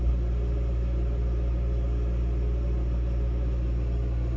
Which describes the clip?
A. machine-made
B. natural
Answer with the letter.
B